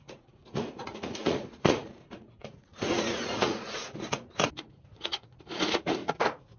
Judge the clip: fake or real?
fake